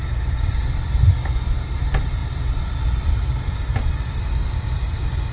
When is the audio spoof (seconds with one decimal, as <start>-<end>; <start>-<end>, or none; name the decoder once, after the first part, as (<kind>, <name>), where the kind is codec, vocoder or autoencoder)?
none